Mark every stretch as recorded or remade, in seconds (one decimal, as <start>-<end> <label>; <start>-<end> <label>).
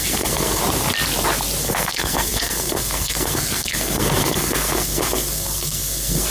0.0-0.6 remade; 0.6-1.6 recorded; 1.6-6.3 remade